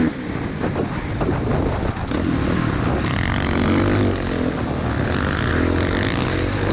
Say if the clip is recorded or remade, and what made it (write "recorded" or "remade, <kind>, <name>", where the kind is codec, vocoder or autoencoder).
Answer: recorded